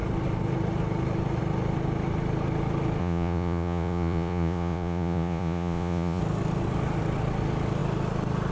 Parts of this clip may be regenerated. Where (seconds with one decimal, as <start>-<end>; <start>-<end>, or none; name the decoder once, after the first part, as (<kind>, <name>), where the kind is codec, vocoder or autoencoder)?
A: 3.0-6.2 (vocoder, Vocos)